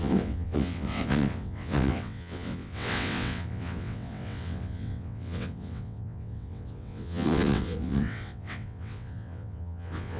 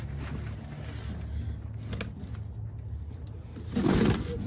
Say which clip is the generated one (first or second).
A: first